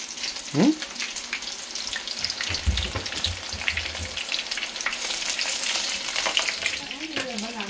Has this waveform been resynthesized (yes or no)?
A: no